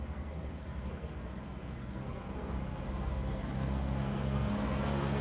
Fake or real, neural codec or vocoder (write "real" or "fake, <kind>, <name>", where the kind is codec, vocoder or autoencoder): fake, codec, SNAC